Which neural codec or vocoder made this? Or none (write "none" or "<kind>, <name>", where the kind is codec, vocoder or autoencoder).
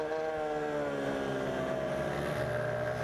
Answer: none